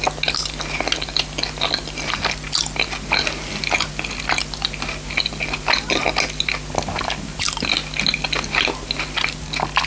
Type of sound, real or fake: real